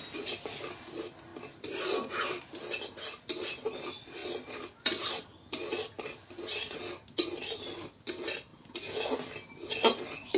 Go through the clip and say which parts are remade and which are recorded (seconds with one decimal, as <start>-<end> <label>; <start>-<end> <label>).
0.0-10.4 recorded